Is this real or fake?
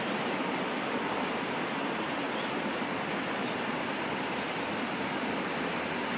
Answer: fake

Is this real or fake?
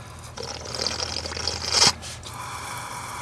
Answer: real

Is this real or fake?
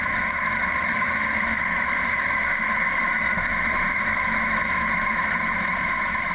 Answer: fake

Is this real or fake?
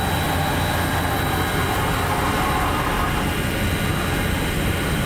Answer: real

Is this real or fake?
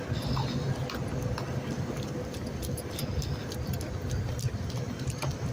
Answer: real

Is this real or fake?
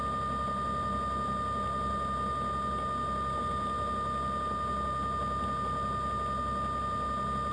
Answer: real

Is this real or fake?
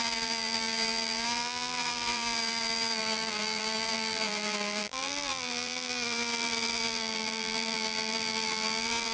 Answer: fake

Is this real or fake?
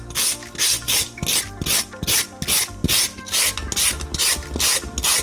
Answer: real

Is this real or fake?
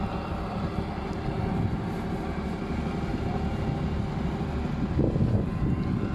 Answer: real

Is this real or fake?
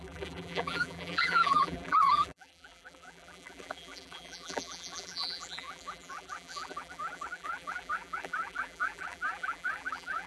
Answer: fake